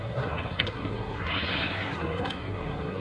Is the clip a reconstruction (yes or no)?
yes